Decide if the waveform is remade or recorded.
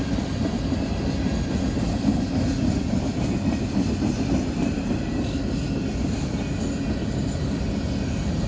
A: recorded